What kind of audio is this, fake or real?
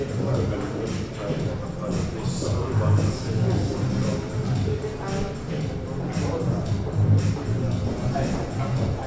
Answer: real